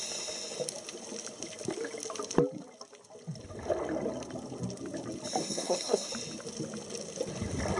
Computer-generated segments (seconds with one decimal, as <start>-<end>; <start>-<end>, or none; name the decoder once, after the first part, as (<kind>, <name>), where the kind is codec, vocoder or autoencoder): 5.4-6.1 (codec, SNAC)